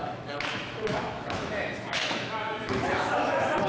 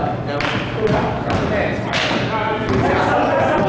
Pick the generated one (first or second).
first